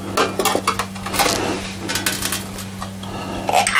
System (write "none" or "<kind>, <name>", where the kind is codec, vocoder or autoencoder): none